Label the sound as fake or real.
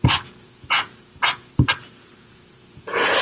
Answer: fake